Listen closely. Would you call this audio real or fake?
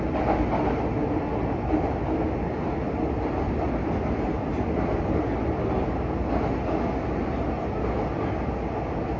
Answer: real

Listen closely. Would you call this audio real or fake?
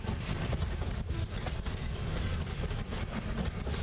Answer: fake